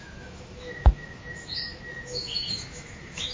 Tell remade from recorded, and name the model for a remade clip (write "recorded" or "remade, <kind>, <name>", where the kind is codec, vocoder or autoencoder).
remade, autoencoder, DAC-VAE